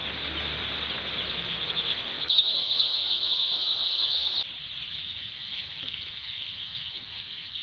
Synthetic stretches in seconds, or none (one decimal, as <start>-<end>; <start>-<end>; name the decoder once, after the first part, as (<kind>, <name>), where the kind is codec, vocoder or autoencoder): 1.3-4.3 (codec, SNAC); 4.9-7.6